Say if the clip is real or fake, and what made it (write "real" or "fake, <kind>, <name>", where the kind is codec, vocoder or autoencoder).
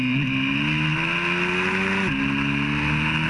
real